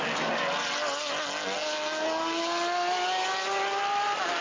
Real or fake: real